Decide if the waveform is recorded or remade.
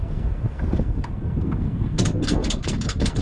remade